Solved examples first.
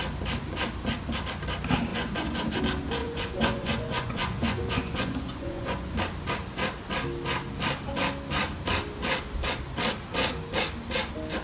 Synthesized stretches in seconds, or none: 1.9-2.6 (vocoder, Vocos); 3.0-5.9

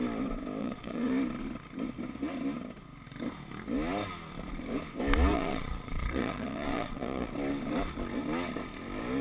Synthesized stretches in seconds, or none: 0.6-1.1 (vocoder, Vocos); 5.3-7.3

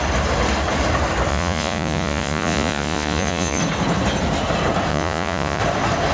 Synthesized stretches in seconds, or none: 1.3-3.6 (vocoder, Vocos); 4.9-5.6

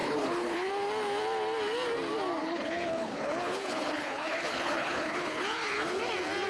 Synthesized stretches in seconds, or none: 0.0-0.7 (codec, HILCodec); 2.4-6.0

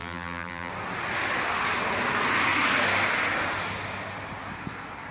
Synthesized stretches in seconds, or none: 0.0-0.7 (vocoder, BigVGAN v2)